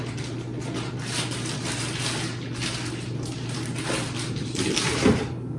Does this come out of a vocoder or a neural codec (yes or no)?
no